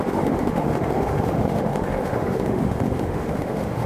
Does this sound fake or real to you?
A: fake